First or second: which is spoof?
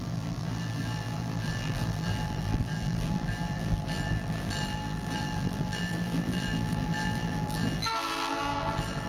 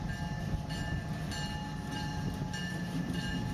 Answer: first